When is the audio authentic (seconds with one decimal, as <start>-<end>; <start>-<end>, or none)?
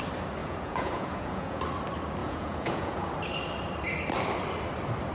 0.0-0.4; 1.6-2.2; 3.1-5.1